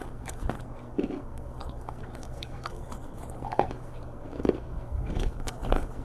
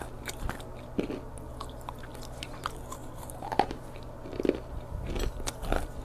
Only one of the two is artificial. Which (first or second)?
first